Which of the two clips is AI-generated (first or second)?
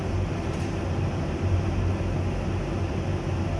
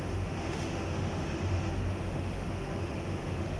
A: second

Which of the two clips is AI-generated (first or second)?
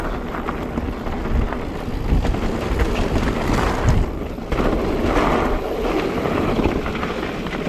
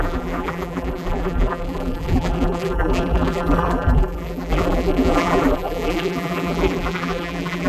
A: second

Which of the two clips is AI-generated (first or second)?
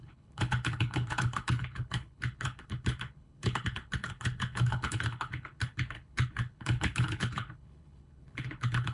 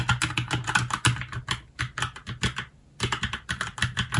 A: first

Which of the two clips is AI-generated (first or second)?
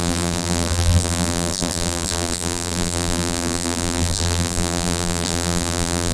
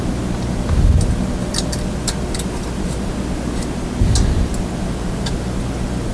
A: first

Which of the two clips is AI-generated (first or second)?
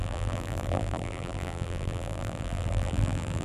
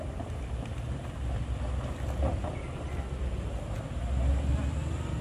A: first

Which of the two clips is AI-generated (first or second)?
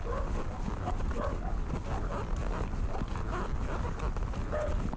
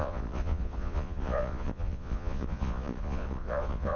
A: second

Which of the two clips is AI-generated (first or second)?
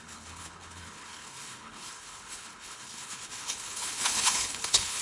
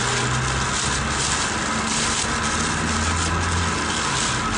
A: first